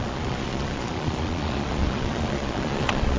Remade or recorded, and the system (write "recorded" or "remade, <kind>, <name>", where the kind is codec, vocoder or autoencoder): remade, vocoder, Vocos